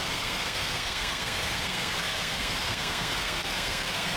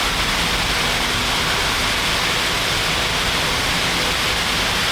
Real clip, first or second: second